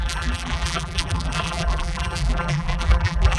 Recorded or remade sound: remade